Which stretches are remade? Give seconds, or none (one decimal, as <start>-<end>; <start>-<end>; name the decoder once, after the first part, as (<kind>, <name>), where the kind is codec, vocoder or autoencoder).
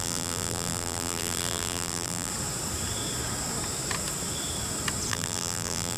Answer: 0.0-2.3 (vocoder, BigVGAN v2); 5.1-6.0